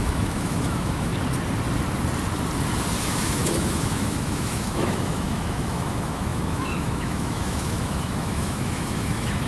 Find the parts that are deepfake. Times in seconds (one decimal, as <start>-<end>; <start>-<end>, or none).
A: 0.0-1.1; 3.0-9.5